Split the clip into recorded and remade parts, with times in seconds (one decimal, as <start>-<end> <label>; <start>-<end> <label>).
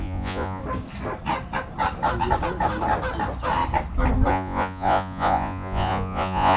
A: 0.0-0.6 remade; 0.6-4.3 recorded; 4.3-6.6 remade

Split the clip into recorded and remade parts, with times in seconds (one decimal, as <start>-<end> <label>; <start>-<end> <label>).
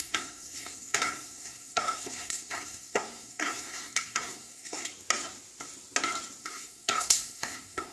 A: 0.0-4.9 remade; 4.9-6.4 recorded; 6.4-7.9 remade